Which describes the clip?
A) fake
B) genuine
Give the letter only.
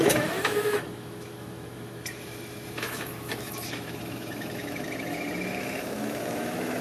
A